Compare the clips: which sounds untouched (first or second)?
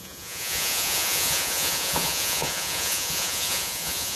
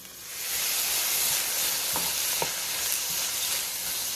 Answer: second